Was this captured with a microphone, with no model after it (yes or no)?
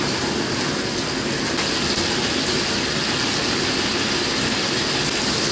yes